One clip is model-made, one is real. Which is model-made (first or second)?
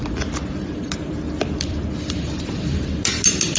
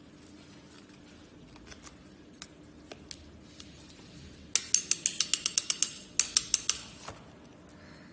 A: first